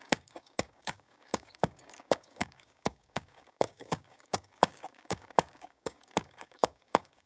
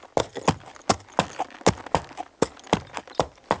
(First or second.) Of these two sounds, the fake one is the first